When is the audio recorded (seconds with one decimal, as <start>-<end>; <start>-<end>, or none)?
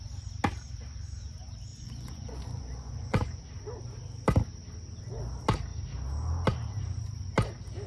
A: 0.0-1.7; 3.4-7.9